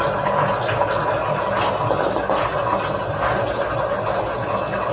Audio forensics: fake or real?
real